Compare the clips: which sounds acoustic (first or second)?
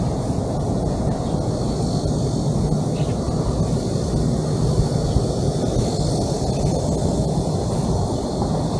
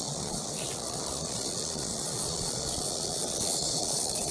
first